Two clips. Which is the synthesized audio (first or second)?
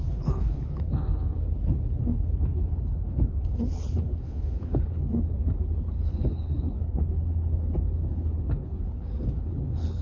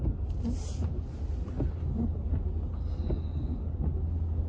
first